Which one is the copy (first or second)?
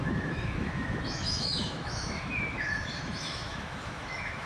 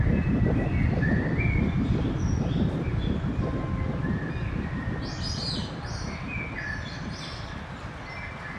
first